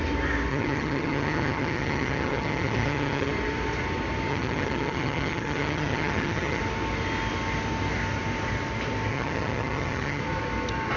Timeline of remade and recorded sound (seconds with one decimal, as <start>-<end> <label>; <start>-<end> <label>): 0.0-0.5 recorded; 0.5-3.3 remade; 3.3-4.3 recorded; 4.3-6.6 remade; 6.6-9.1 recorded; 9.1-10.2 remade; 10.2-11.0 recorded